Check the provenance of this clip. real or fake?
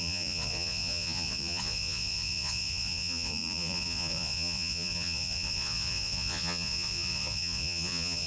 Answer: fake